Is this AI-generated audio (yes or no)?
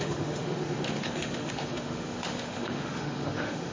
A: yes